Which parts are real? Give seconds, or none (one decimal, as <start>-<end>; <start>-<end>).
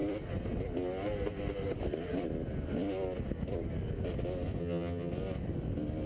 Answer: 0.0-4.6; 5.1-6.1